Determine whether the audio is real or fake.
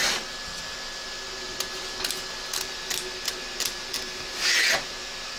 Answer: real